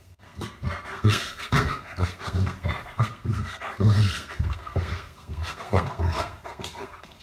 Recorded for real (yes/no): no